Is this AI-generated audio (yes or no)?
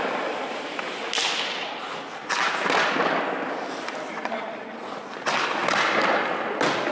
no